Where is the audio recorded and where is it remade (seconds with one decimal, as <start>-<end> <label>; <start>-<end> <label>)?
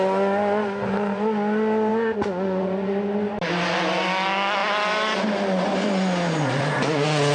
0.0-1.9 recorded; 1.9-3.0 remade; 3.0-7.3 recorded